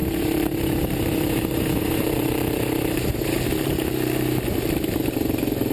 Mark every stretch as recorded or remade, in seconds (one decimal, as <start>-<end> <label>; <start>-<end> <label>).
0.0-3.4 remade; 3.4-5.7 recorded